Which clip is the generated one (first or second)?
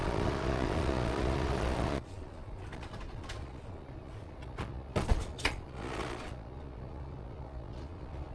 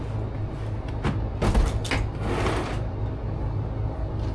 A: first